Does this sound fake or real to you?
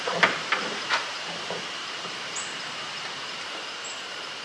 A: fake